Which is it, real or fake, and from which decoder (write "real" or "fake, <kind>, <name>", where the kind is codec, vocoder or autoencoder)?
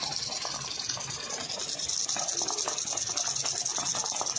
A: real